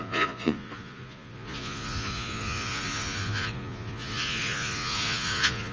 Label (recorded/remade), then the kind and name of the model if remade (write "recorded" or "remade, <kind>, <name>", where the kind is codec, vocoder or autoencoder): remade, vocoder, Vocos